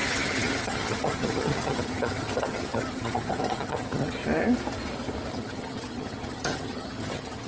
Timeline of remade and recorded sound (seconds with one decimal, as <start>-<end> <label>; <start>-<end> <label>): 0.0-4.2 remade; 4.2-5.3 recorded; 5.3-7.5 remade